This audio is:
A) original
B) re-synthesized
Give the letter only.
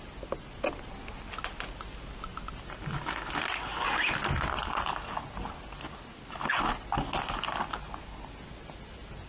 A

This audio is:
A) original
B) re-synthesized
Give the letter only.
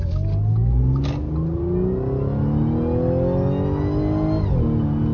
A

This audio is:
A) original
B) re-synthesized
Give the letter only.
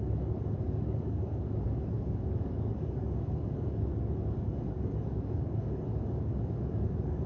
B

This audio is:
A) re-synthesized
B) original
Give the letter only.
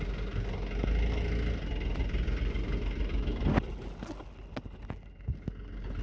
B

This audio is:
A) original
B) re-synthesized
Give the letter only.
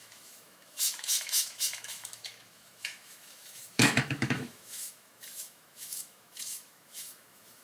B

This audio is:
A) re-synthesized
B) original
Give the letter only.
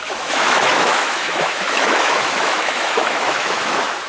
A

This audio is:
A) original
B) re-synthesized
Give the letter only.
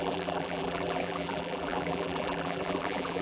B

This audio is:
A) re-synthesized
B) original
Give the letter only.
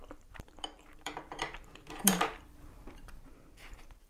A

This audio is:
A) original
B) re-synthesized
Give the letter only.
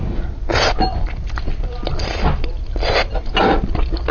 A